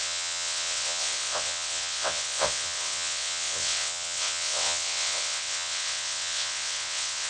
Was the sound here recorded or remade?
remade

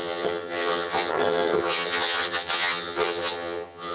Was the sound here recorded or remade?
remade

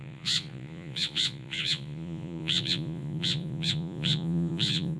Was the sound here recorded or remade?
remade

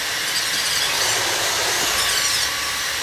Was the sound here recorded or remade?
recorded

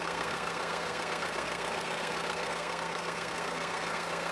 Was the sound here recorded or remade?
remade